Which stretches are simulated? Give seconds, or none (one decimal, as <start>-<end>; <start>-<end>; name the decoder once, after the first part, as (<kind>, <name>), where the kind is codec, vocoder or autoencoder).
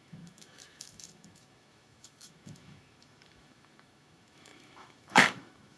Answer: 0.0-5.8 (autoencoder, DAC-VAE)